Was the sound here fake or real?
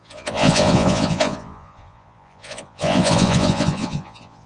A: fake